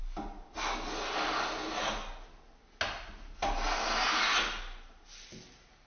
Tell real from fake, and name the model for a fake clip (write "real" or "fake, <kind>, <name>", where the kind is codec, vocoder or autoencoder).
real